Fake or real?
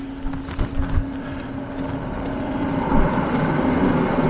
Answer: real